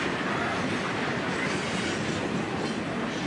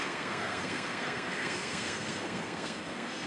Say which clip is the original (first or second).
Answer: first